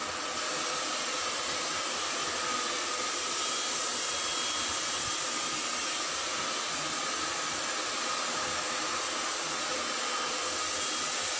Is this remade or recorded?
recorded